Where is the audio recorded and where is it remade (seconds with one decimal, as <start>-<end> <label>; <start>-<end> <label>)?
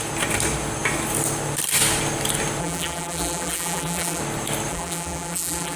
0.0-2.6 recorded; 2.6-4.2 remade; 4.2-4.7 recorded; 4.7-5.8 remade